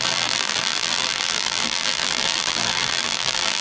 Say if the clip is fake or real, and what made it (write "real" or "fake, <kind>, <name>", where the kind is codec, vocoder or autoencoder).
fake, vocoder, BigVGAN v2